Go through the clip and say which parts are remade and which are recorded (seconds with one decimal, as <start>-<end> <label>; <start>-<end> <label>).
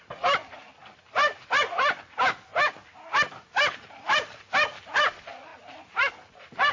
0.0-2.5 remade; 2.5-3.9 recorded; 3.9-5.5 remade; 5.5-6.1 recorded; 6.1-6.7 remade